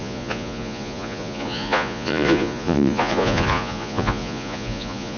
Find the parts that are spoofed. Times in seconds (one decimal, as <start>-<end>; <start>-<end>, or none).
0.0-5.2